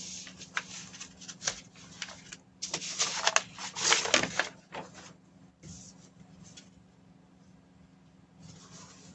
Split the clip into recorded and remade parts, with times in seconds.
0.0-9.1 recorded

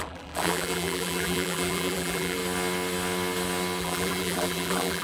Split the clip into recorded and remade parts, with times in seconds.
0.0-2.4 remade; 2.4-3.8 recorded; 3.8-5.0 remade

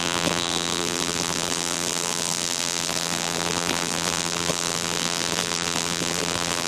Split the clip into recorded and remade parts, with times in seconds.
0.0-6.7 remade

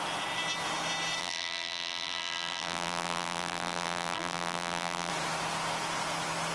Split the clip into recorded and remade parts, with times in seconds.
0.0-1.2 recorded; 1.2-5.1 remade; 5.1-6.5 recorded

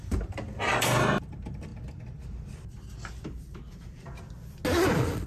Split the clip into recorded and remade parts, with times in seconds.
0.0-1.7 remade; 1.7-5.3 recorded

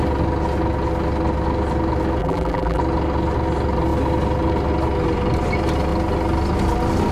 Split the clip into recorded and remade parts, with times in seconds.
0.0-2.2 recorded; 2.2-2.8 remade; 2.8-7.1 recorded

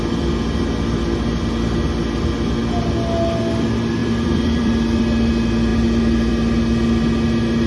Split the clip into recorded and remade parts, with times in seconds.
0.0-4.0 recorded; 4.0-5.0 remade; 5.0-7.7 recorded

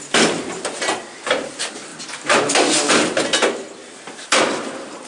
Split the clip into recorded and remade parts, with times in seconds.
0.0-3.8 recorded; 3.8-4.4 remade; 4.4-5.1 recorded